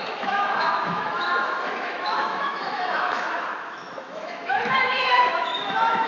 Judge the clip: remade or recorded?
remade